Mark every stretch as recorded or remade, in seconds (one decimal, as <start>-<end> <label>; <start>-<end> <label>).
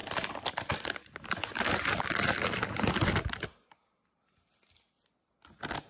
0.0-5.9 recorded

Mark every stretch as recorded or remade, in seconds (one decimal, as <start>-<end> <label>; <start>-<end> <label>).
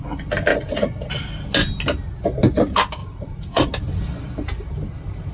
0.0-0.5 recorded; 0.5-1.1 remade; 1.1-3.0 recorded; 3.0-3.7 remade; 3.7-5.3 recorded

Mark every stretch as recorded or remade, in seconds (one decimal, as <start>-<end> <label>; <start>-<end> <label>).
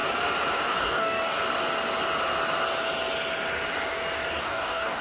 0.0-0.8 recorded; 0.8-1.4 remade; 1.4-4.4 recorded; 4.4-5.0 remade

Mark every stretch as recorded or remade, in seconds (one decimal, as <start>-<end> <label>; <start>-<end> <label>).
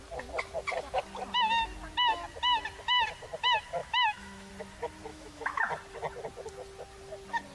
0.0-3.8 recorded; 3.8-4.5 remade; 4.5-5.1 recorded; 5.1-5.7 remade; 5.7-7.5 recorded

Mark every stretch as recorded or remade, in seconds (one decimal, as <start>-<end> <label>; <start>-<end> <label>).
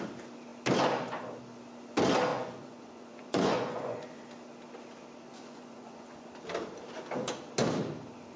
0.0-2.3 recorded; 2.3-4.2 remade; 4.2-5.3 recorded; 5.3-6.3 remade; 6.3-8.4 recorded